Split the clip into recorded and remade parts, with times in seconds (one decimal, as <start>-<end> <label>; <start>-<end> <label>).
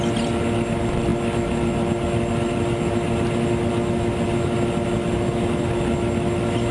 0.0-6.7 recorded